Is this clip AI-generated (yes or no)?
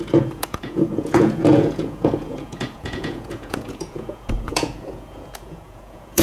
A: yes